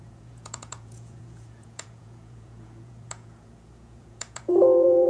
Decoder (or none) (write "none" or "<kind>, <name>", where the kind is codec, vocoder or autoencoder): vocoder, Vocos